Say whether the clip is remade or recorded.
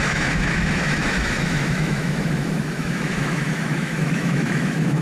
remade